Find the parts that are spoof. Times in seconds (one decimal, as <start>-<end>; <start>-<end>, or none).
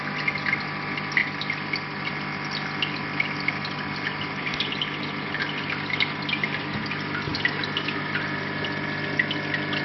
none